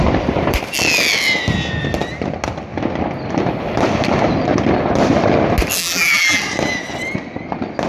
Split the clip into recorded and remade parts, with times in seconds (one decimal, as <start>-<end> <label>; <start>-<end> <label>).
0.0-5.8 recorded; 5.8-6.4 remade; 6.4-7.9 recorded